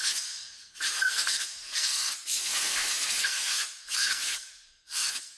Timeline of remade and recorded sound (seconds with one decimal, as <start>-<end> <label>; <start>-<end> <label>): 0.0-5.4 remade